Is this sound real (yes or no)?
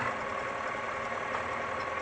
yes